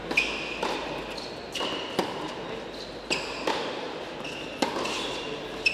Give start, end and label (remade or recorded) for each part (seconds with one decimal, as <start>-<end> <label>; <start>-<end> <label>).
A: 0.0-1.3 remade; 1.3-5.7 recorded